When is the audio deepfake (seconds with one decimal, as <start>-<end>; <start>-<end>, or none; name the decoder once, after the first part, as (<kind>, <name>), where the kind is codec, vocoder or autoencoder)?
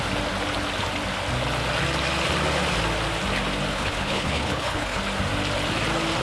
3.7-5.0 (codec, HILCodec)